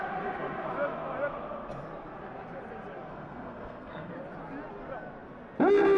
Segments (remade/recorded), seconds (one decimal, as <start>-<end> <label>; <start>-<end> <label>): 0.0-3.1 recorded; 3.1-4.1 remade; 4.1-6.0 recorded